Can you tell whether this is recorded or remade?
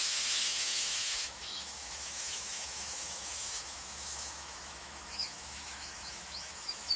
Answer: remade